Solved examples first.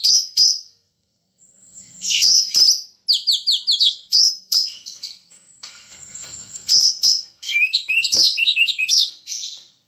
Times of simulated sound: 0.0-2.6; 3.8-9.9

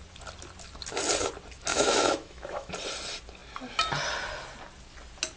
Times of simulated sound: 1.7-2.7

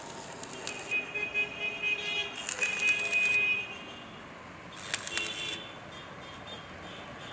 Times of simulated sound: none

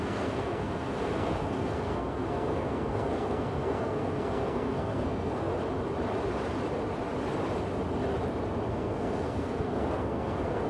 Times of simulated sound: 0.0-5.5; 8.7-10.7

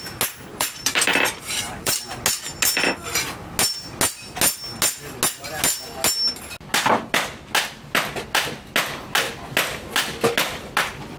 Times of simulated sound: 0.5-2.2

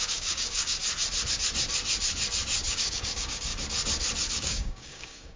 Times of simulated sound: 0.0-0.8; 2.7-3.5; 4.3-5.4

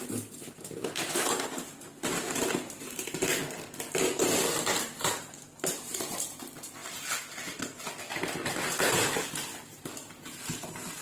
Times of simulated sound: none